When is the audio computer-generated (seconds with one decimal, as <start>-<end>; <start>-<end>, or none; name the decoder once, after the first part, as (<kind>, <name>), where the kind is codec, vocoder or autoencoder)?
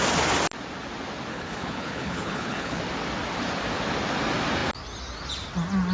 1.3-2.8 (codec, HILCodec)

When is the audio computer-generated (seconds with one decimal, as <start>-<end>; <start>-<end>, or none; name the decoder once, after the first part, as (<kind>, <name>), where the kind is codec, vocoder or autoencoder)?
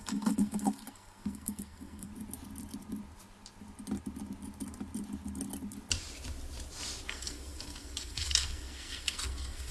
0.0-2.1 (codec, SNAC); 7.1-9.7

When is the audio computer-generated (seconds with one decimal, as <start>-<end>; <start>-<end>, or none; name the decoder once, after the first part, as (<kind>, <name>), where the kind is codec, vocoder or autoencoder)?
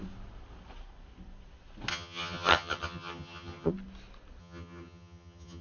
1.9-3.7 (vocoder, HiFi-GAN); 4.4-5.6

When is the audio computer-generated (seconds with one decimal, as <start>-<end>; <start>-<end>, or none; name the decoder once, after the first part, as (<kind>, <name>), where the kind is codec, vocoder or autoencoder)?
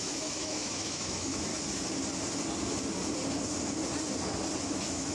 0.0-1.5 (autoencoder, DAC-VAE); 4.6-5.1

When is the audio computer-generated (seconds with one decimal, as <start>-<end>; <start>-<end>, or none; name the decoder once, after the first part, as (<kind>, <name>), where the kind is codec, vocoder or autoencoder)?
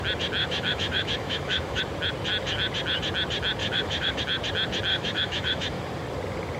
0.4-1.8 (autoencoder, DAC-VAE); 3.6-4.2; 4.9-5.8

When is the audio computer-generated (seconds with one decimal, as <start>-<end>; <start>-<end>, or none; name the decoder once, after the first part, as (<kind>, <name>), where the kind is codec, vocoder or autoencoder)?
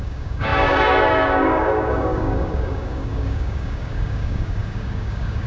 0.0-5.5 (codec, DAC)